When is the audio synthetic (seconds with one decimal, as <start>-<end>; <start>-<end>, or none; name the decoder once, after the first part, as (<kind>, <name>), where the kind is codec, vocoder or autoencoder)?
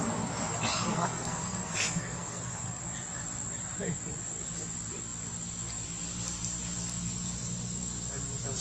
0.9-2.8 (codec, SNAC)